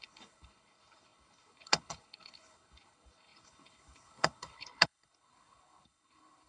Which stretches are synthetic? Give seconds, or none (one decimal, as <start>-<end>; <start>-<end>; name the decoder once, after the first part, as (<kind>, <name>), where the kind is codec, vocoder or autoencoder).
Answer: 0.0-6.5 (codec, HILCodec)